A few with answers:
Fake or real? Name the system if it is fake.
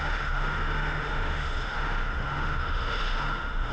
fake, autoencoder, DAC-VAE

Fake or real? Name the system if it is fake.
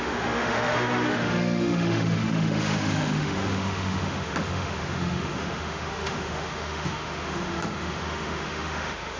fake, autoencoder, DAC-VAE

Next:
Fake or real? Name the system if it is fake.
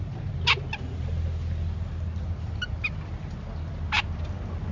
real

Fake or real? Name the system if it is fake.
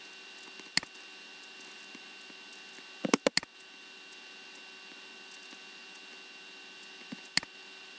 real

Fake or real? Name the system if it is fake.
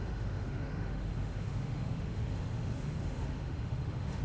fake, autoencoder, DAC-VAE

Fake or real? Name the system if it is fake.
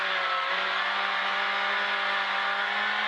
real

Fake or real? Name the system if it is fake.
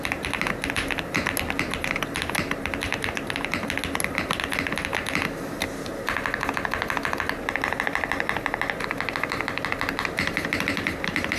real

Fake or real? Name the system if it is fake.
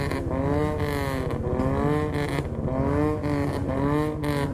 real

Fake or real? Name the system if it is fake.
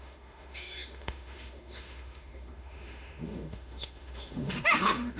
fake, autoencoder, DAC-VAE